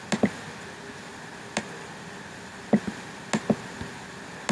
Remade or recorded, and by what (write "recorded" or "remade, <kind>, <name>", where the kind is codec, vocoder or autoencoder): recorded